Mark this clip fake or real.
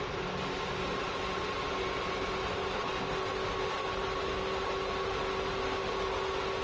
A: real